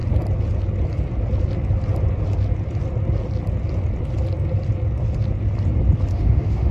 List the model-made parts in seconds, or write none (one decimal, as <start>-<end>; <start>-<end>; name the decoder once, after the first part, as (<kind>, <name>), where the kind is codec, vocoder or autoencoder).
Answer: 6.1-6.7 (autoencoder, DAC-VAE)